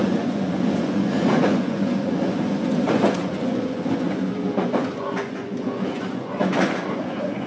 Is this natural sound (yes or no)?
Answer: no